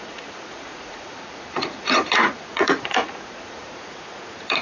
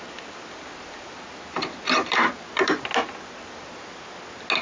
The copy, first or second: first